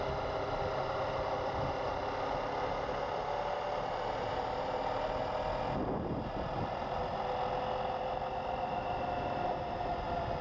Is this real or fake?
real